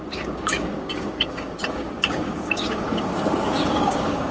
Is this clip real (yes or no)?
no